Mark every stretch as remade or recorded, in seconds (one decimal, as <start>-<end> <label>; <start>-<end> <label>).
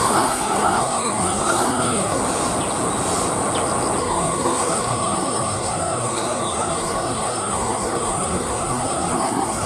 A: 0.0-2.2 remade; 2.2-4.0 recorded; 4.0-9.7 remade